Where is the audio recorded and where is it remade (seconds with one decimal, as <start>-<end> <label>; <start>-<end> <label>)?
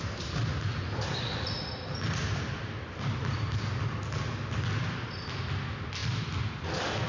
0.0-6.0 recorded; 6.0-6.5 remade; 6.5-7.1 recorded